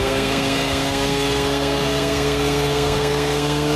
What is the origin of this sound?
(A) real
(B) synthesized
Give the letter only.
B